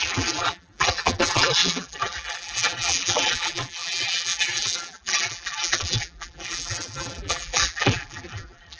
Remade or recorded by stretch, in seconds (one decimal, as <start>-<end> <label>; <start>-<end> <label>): 0.0-8.8 remade